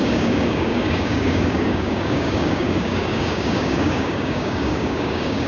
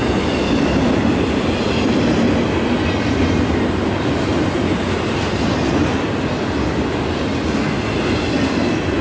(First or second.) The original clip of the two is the second